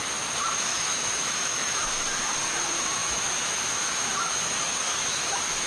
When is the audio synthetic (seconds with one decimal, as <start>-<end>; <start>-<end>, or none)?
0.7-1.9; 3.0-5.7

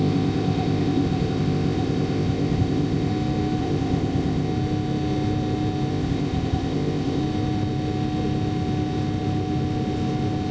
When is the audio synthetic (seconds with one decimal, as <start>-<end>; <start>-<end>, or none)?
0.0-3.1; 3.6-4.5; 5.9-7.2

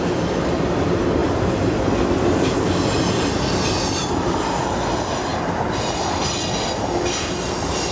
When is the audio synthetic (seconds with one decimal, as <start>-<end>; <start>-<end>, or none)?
4.0-4.6; 5.3-6.2